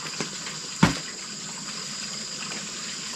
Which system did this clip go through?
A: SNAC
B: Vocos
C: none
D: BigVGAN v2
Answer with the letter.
C